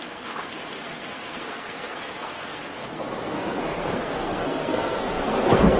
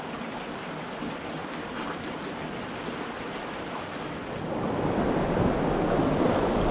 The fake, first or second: first